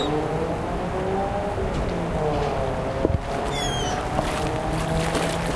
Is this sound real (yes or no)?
yes